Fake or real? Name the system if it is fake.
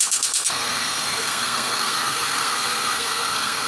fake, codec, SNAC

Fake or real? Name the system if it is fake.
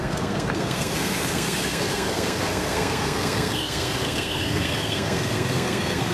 fake, codec, SNAC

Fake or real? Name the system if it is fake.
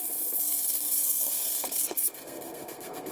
fake, codec, SNAC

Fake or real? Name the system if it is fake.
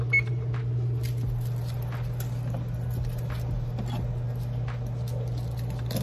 real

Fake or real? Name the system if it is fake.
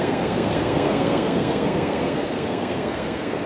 fake, codec, SNAC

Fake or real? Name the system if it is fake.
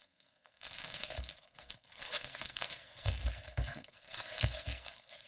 fake, codec, SNAC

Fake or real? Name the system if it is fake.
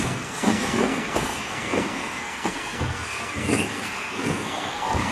fake, codec, SNAC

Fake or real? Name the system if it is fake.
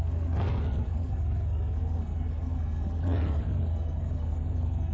fake, codec, SNAC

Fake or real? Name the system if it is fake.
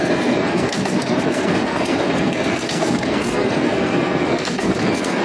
fake, codec, SNAC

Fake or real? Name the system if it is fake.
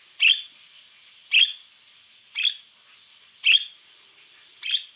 real